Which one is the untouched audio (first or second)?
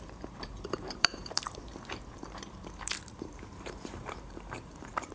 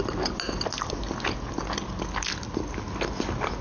second